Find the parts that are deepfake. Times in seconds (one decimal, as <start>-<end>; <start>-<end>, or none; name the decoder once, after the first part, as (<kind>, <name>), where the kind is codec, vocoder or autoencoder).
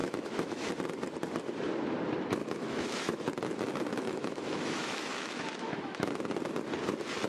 0.0-0.7 (autoencoder, DAC-VAE); 2.4-3.3; 3.9-6.2